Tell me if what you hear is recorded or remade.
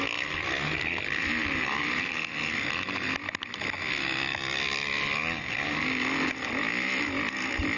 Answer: recorded